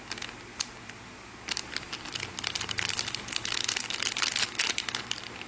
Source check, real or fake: real